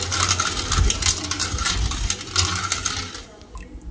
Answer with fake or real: real